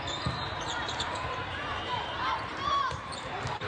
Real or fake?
fake